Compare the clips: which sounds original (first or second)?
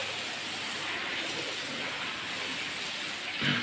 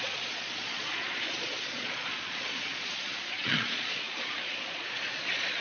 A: first